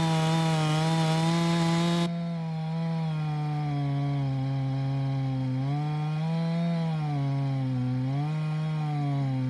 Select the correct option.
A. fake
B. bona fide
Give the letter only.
B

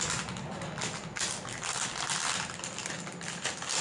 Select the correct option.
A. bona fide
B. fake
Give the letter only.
A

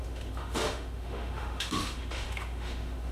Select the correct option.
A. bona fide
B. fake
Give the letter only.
B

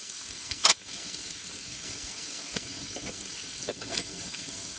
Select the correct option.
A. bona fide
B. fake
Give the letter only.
B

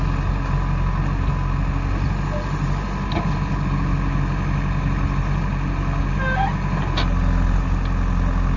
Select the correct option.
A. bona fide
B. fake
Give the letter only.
A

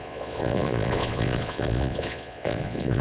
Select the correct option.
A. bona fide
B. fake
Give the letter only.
B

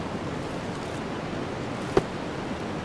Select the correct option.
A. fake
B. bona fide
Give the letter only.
B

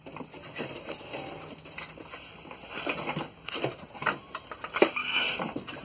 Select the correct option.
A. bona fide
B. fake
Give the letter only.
A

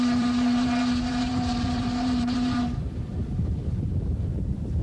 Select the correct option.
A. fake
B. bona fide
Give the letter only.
A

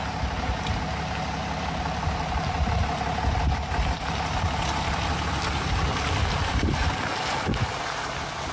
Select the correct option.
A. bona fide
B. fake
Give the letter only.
A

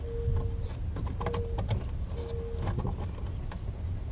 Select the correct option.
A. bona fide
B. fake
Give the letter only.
A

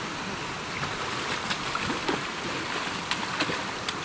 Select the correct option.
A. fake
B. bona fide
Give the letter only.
B